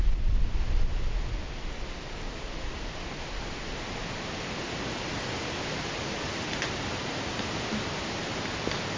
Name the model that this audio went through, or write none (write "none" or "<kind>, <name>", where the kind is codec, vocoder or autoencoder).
none